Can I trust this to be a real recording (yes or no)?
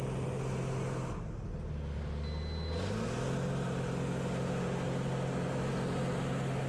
yes